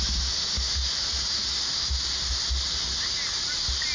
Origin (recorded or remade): recorded